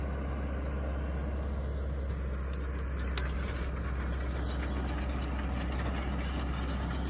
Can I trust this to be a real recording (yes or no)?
yes